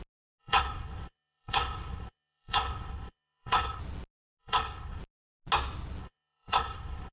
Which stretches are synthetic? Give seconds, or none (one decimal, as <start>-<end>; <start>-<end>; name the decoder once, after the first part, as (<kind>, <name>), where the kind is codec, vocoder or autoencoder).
0.4-3.8 (codec, HILCodec); 4.4-5.0; 6.0-7.1